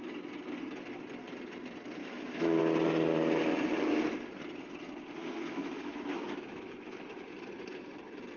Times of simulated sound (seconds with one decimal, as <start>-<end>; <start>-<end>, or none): 2.0-2.6; 5.2-7.3